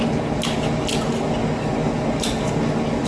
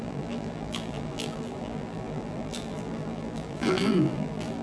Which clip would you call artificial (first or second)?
second